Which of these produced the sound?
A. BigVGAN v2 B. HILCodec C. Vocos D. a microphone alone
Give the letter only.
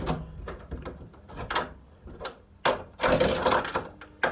D